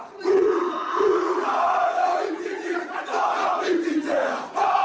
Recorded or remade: remade